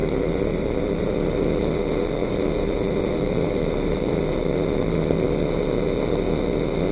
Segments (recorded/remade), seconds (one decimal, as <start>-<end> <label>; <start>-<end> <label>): 0.0-1.4 remade; 1.4-2.2 recorded; 2.2-4.3 remade; 4.3-6.9 recorded